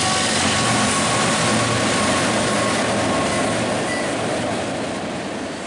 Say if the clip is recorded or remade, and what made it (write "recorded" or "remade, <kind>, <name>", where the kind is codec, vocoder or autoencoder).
recorded